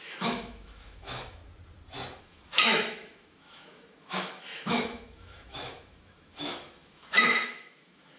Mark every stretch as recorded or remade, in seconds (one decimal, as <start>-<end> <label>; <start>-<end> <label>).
0.0-1.4 remade; 1.4-2.2 recorded; 2.2-8.2 remade